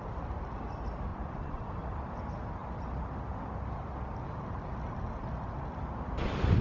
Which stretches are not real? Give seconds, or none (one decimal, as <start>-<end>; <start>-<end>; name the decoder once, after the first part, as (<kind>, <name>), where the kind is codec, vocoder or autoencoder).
1.1-1.7 (vocoder, Vocos)